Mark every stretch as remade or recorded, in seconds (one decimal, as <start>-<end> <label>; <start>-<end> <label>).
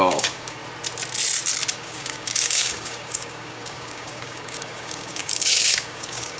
0.0-0.6 remade; 0.6-1.7 recorded; 1.7-6.4 remade